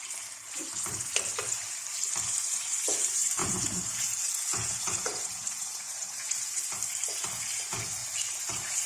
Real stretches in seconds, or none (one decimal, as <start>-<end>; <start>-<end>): 0.0-3.4; 6.6-8.9